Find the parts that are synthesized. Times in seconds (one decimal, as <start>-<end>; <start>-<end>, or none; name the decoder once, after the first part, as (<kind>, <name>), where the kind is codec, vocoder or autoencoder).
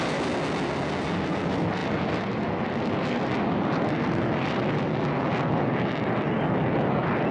none